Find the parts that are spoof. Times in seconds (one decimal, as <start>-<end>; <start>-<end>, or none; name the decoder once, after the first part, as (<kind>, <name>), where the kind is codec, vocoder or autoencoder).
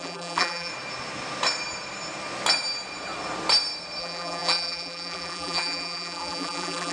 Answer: 0.0-0.7 (vocoder, BigVGAN v2); 4.0-6.9